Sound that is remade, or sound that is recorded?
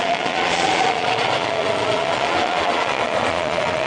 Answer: remade